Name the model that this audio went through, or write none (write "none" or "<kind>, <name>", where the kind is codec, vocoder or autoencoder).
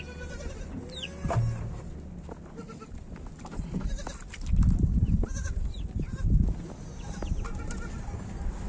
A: none